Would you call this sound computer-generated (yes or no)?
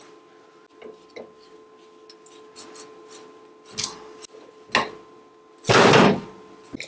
no